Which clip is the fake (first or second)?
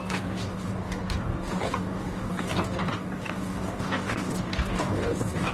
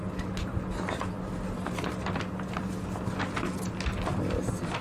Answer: first